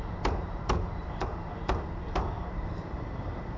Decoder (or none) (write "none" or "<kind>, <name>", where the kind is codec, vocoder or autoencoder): vocoder, BigVGAN v2